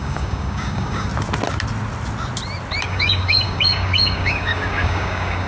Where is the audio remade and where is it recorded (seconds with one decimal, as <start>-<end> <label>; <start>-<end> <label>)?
0.0-1.1 remade; 1.1-2.8 recorded; 2.8-5.5 remade